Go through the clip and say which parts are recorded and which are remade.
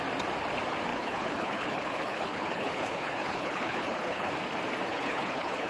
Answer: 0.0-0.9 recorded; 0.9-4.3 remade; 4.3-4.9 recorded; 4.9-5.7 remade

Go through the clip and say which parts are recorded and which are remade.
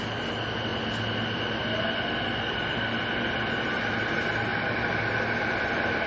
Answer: 0.0-6.1 recorded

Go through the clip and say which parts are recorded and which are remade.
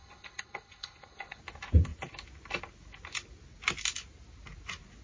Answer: 0.0-1.4 remade; 1.4-5.0 recorded